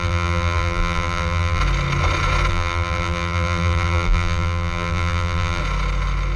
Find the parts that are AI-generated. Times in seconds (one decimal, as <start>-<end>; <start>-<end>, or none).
0.0-1.6; 2.5-5.6